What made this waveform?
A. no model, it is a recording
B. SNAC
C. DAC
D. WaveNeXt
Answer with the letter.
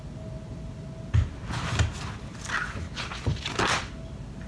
A